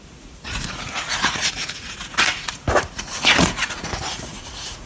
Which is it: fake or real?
fake